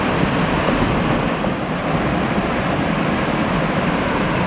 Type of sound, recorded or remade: recorded